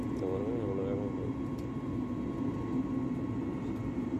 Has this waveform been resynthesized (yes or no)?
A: no